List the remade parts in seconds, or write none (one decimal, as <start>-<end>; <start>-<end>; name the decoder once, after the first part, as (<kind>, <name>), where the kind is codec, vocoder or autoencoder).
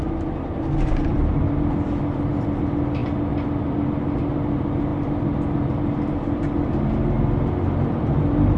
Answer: none